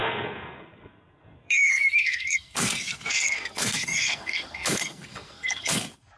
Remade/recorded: remade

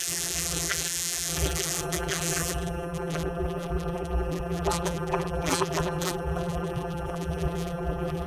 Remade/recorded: remade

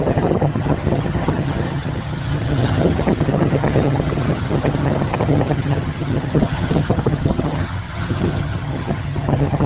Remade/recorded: remade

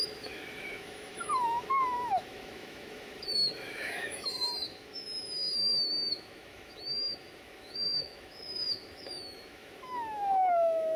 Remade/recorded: remade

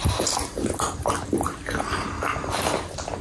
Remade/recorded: recorded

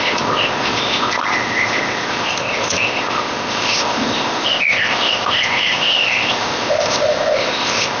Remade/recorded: remade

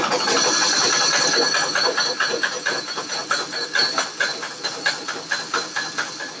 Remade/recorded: recorded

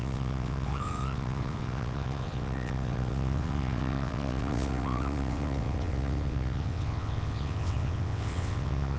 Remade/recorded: remade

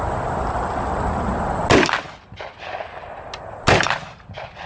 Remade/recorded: recorded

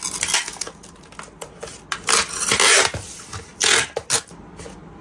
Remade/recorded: recorded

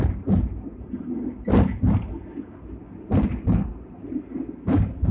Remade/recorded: recorded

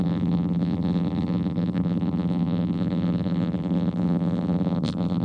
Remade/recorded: remade